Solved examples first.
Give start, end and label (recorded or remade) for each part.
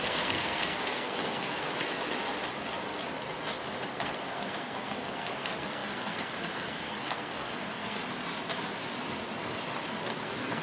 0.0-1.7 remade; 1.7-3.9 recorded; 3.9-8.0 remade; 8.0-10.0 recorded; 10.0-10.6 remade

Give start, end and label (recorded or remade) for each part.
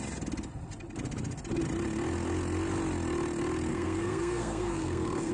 0.0-3.7 recorded; 3.7-5.3 remade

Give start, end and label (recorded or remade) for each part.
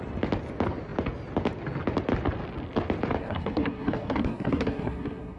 0.0-3.2 recorded; 3.2-5.4 remade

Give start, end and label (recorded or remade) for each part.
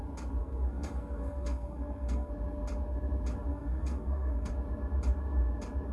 0.0-0.4 recorded; 0.4-2.3 remade; 2.3-3.5 recorded; 3.5-4.5 remade; 4.5-5.9 recorded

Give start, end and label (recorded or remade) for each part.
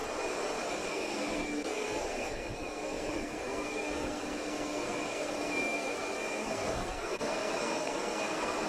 0.0-0.7 recorded; 0.7-8.7 remade